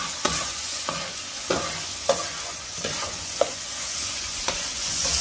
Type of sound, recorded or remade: remade